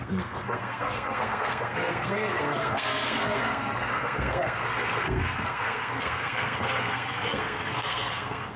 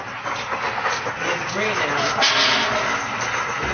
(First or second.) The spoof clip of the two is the first